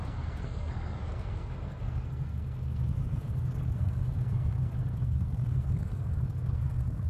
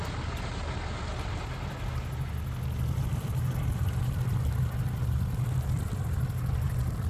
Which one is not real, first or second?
first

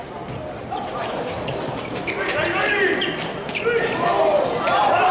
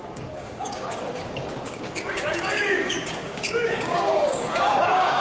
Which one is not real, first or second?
second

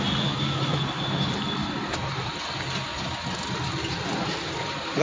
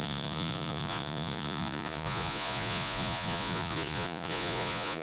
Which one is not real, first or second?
second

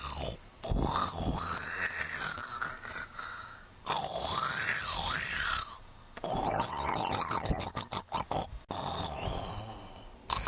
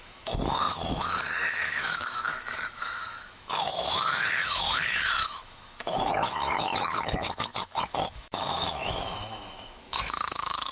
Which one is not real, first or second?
second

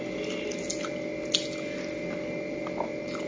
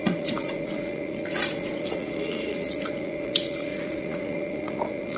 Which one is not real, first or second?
second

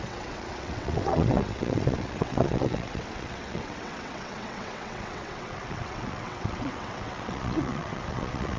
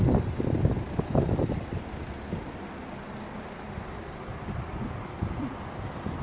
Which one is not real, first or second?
first